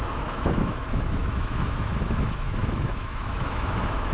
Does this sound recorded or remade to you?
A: remade